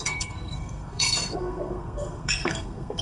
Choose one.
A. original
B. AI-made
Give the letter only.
B